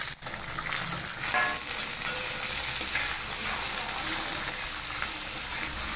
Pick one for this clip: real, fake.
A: real